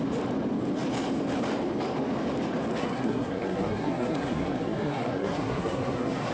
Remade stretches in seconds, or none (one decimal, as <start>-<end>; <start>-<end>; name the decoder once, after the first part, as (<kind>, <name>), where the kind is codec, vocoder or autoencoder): 2.8-6.3 (codec, SNAC)